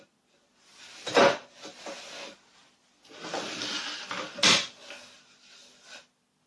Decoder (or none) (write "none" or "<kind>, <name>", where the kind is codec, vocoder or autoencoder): none